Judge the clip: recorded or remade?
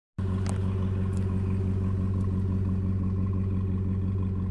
recorded